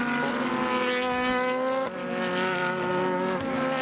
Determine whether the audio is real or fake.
real